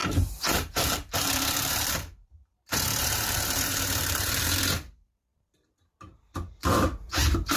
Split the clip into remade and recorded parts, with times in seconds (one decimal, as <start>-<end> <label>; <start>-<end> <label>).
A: 0.0-4.6 remade; 4.6-5.3 recorded; 5.3-7.6 remade